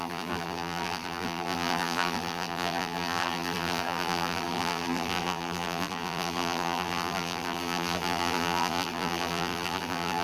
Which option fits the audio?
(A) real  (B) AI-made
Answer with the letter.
B